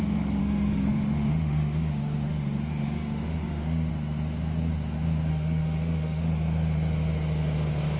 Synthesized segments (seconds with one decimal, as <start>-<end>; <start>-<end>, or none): 0.4-3.9; 5.3-6.2